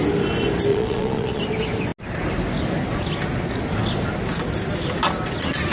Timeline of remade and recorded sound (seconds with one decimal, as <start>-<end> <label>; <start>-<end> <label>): 0.0-0.7 recorded; 0.7-1.4 remade; 1.4-5.7 recorded